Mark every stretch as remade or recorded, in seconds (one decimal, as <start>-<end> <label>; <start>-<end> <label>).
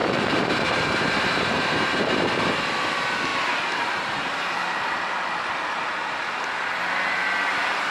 0.0-2.3 remade; 2.3-3.3 recorded; 3.3-5.1 remade; 5.1-7.9 recorded